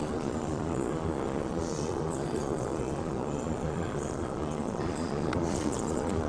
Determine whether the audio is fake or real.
fake